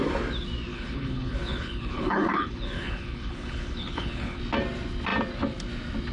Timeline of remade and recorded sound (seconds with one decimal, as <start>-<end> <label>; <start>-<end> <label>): 0.0-0.7 recorded; 0.7-4.4 remade; 4.4-6.1 recorded